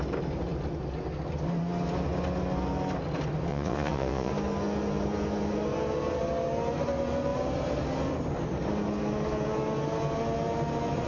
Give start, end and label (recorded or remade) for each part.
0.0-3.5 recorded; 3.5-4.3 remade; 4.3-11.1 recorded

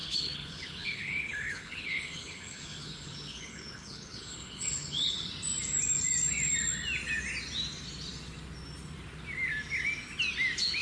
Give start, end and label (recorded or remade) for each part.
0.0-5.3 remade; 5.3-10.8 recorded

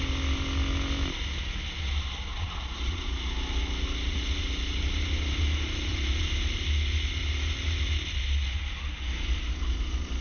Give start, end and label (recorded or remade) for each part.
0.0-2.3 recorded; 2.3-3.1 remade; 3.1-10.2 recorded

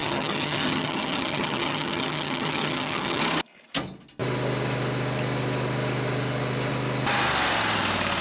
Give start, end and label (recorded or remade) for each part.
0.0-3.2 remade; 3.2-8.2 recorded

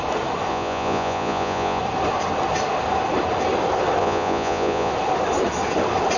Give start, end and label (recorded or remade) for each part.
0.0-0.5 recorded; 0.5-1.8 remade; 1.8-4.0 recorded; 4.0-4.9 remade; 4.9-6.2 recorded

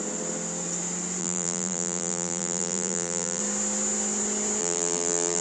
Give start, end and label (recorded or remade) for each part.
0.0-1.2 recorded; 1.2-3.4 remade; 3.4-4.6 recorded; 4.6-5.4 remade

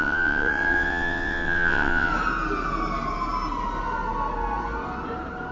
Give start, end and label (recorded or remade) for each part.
0.0-2.1 remade; 2.1-5.5 recorded

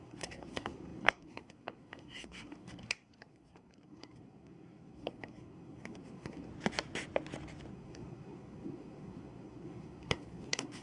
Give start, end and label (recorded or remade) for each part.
0.0-6.5 remade; 6.5-7.7 recorded; 7.7-10.8 remade